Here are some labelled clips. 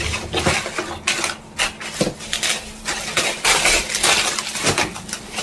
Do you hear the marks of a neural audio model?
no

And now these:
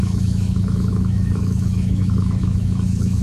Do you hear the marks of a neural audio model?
yes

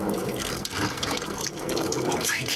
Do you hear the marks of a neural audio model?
yes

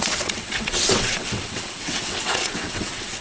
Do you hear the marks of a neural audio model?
yes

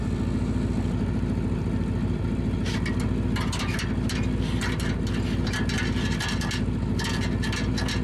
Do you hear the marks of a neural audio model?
no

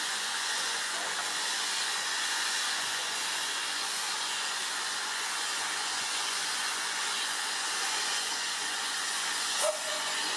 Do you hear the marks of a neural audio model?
yes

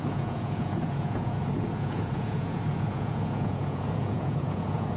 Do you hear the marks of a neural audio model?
yes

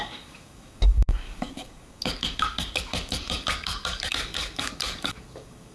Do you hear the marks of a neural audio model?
yes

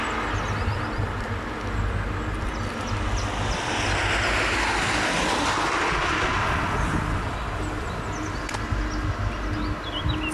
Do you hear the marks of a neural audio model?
no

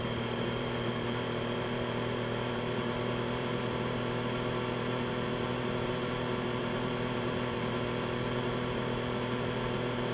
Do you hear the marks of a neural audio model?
yes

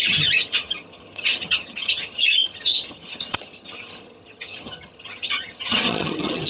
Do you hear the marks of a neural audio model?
yes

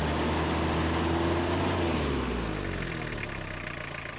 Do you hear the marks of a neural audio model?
no